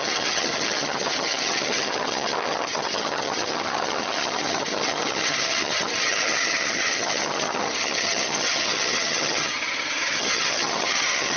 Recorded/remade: remade